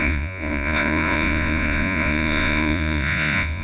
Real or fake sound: fake